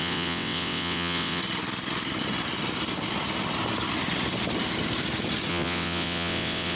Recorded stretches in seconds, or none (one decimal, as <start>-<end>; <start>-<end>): 1.4-5.5